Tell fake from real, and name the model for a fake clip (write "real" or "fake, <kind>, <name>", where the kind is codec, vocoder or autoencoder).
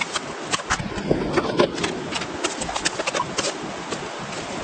real